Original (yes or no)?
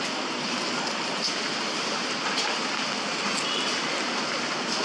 yes